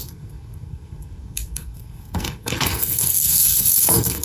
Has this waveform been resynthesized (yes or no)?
yes